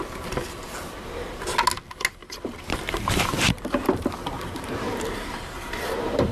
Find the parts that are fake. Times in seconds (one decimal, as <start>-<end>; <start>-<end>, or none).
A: 2.2-6.3